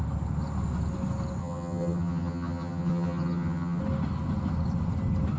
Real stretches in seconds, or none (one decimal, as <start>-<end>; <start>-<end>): 0.0-1.4; 3.8-5.4